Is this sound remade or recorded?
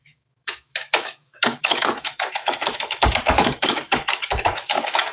remade